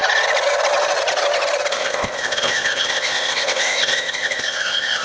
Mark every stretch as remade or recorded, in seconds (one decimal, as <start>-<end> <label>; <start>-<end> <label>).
0.0-1.7 recorded; 1.7-5.0 remade